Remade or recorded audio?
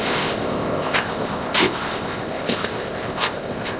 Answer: remade